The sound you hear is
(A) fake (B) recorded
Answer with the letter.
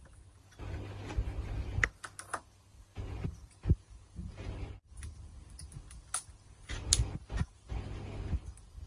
B